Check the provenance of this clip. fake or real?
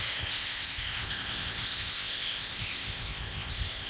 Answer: fake